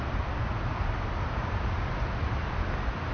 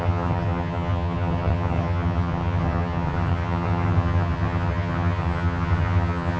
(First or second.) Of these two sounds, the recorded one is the first